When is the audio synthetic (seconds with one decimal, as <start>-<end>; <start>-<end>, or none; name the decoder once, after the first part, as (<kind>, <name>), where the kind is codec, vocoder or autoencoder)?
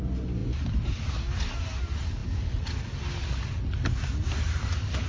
none